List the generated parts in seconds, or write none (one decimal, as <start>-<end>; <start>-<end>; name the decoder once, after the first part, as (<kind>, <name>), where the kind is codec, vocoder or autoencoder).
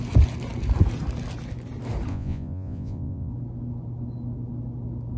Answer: 2.1-3.3 (vocoder, Vocos)